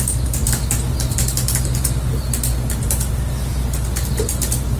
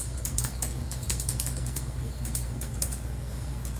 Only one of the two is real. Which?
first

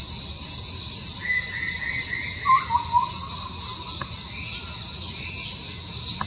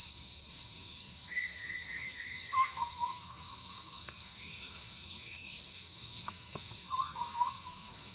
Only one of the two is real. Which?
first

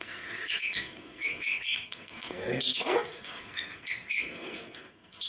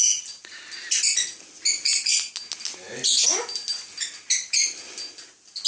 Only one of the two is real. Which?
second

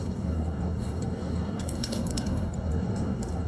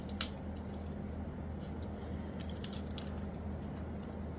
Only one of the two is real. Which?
second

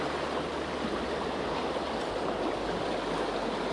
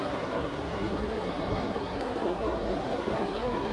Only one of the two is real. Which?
first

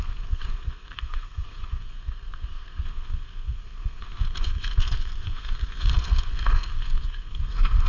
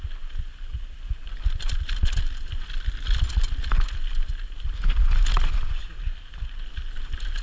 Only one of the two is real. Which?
second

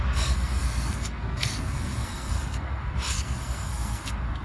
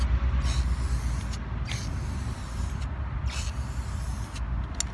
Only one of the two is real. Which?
second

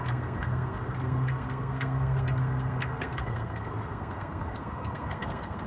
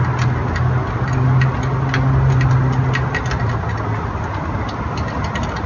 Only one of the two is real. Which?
second